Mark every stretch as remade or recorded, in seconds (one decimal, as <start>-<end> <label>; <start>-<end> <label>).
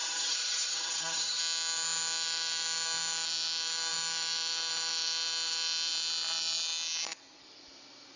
0.0-1.4 remade; 1.4-8.2 recorded